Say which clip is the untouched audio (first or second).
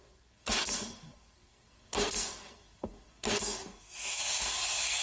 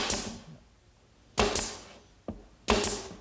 second